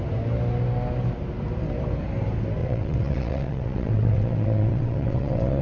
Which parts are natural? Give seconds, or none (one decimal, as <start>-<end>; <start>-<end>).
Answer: 0.0-2.6